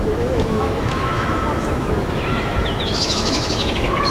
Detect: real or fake fake